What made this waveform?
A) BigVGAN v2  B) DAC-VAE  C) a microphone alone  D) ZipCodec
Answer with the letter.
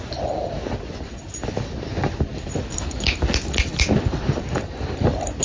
C